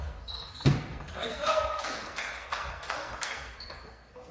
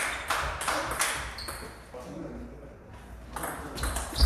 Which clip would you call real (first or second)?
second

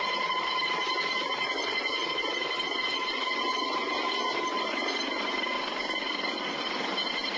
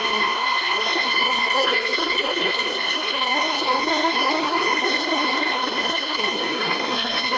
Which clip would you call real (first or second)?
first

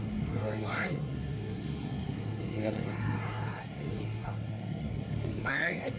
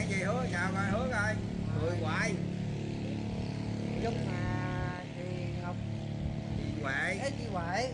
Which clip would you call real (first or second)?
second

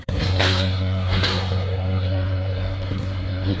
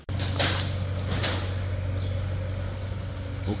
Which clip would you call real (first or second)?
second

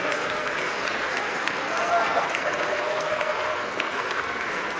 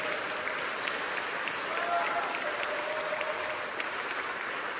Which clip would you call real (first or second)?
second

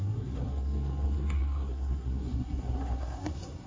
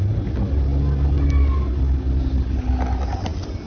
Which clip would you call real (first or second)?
second